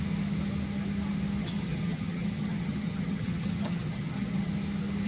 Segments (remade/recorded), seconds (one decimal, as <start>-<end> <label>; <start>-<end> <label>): 0.0-1.4 recorded; 1.4-4.5 remade; 4.5-5.1 recorded

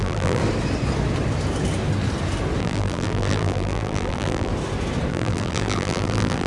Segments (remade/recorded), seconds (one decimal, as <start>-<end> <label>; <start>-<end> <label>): 0.0-0.4 remade; 0.4-2.6 recorded; 2.6-4.5 remade; 4.5-5.1 recorded; 5.1-6.5 remade

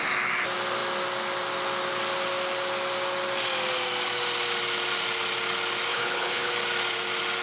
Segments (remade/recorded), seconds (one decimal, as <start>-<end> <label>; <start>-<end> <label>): 0.0-5.9 recorded; 5.9-6.5 remade; 6.5-7.4 recorded

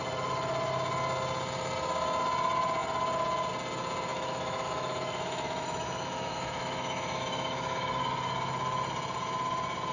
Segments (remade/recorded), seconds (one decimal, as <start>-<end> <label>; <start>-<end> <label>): 0.0-4.1 recorded; 4.1-8.0 remade; 8.0-9.9 recorded

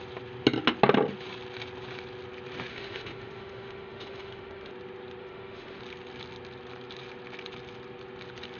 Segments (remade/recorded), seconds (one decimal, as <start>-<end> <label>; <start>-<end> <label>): 0.0-2.7 recorded; 2.7-4.7 remade; 4.7-5.2 recorded; 5.2-5.8 remade; 5.8-8.6 recorded